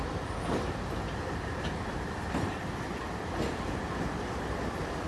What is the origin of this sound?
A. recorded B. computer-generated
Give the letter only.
A